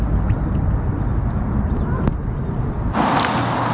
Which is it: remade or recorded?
recorded